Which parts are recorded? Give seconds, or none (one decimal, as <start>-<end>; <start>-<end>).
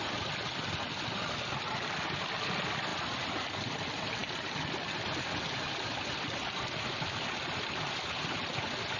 0.0-9.0